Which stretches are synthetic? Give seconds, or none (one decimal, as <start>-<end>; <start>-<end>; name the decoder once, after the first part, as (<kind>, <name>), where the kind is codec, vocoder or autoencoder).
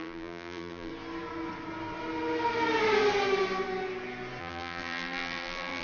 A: 0.0-0.9 (vocoder, BigVGAN v2); 4.4-5.8